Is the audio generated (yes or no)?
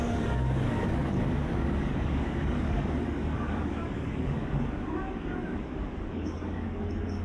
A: yes